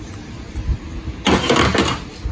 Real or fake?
real